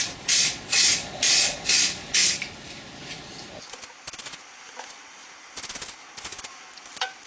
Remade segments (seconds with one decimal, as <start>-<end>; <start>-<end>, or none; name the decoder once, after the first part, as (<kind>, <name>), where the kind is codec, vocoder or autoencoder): 0.0-2.2 (vocoder, Vocos); 4.8-5.2